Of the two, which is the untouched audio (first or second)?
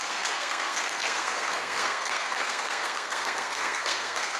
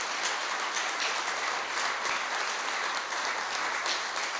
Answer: second